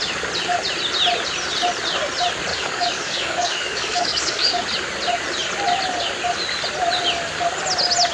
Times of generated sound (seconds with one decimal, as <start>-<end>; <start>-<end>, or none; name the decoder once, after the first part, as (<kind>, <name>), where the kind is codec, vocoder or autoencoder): 2.5-4.6 (codec, DAC)